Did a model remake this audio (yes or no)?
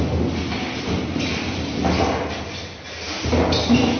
no